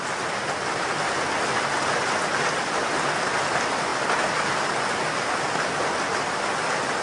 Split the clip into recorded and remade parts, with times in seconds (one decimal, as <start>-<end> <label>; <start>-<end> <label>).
0.0-7.0 recorded

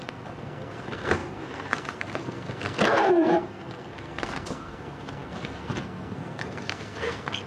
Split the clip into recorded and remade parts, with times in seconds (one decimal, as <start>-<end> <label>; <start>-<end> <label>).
0.0-7.5 remade

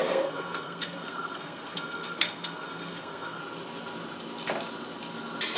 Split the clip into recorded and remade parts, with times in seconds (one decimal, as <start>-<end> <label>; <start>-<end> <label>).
0.0-3.4 remade; 3.4-5.6 recorded

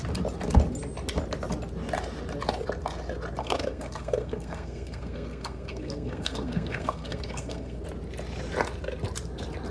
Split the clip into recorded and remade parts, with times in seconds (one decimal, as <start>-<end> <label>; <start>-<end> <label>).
0.0-3.4 recorded; 3.4-7.8 remade; 7.8-9.7 recorded